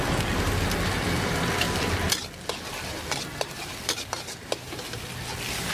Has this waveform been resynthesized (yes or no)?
no